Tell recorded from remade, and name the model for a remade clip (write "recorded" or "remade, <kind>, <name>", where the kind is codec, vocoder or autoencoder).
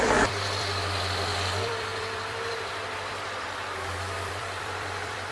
remade, vocoder, BigVGAN v2